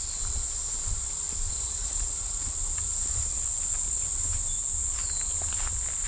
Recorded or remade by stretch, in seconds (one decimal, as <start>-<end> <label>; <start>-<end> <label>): 0.0-1.5 recorded; 1.5-2.5 remade; 2.5-6.1 recorded